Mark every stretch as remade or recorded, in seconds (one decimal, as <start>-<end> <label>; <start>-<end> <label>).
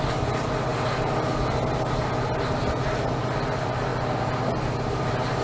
0.0-5.4 recorded